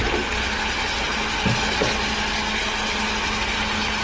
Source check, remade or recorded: recorded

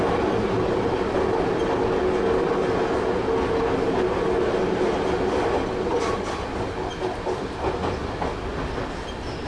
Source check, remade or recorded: recorded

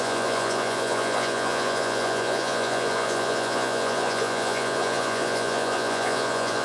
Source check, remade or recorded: remade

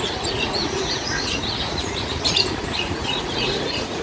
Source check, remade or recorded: remade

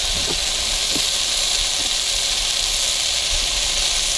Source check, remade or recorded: recorded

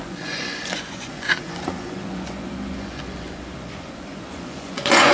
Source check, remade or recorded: remade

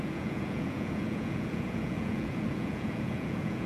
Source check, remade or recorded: remade